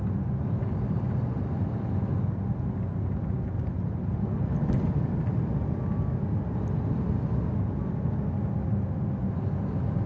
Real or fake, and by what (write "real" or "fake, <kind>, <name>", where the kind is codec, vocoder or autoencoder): real